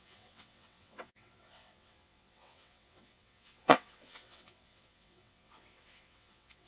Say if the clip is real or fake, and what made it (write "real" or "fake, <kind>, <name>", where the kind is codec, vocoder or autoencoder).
fake, vocoder, WaveNeXt